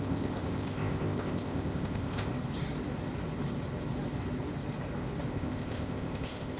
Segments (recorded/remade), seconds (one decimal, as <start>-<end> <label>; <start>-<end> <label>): 0.0-2.3 remade; 2.3-5.3 recorded; 5.3-6.6 remade